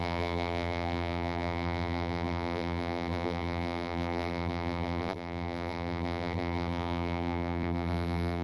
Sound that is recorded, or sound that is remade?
remade